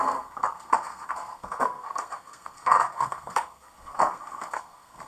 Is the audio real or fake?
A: fake